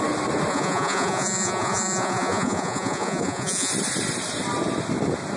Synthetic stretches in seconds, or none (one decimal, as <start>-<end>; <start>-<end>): 0.5-3.7